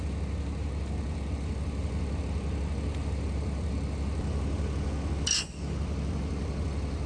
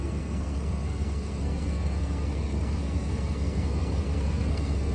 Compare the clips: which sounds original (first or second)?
first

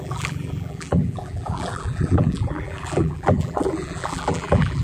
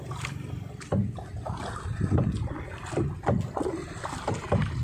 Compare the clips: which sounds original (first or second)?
second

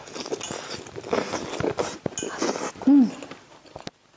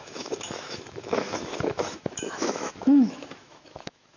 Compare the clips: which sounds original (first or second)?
first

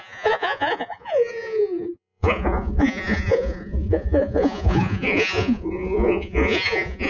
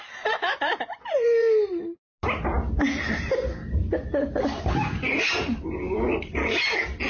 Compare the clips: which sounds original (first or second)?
second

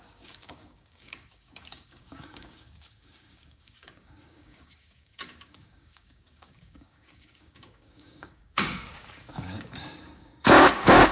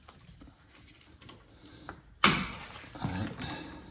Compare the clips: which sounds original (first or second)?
second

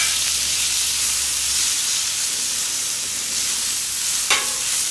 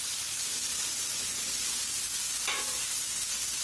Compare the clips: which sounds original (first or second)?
second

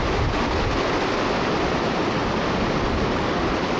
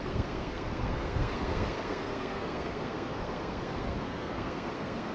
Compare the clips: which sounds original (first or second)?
first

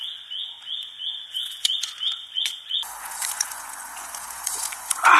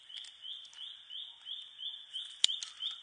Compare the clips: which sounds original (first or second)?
second